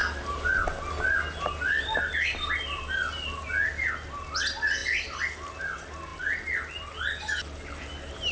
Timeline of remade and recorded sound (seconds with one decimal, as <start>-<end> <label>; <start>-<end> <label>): 0.0-8.3 recorded